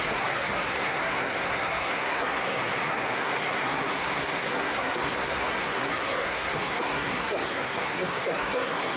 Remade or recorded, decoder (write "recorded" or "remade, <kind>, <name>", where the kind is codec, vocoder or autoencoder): remade, codec, SNAC